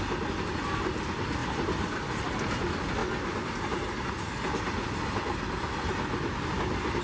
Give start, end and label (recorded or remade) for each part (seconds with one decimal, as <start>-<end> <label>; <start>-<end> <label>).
0.0-7.0 recorded